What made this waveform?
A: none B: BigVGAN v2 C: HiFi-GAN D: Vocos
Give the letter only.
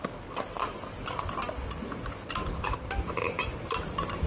A